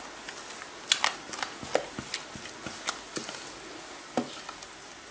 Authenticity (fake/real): real